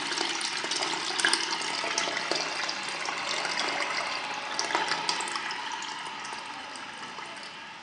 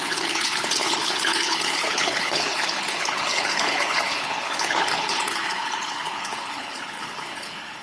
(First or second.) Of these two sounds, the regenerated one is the second